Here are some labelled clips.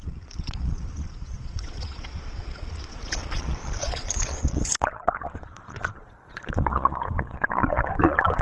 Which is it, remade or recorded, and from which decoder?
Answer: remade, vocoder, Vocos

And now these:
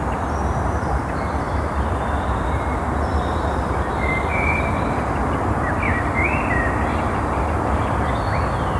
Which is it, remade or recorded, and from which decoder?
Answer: remade, vocoder, BigVGAN v2